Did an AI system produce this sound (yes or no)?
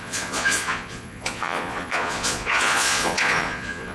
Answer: yes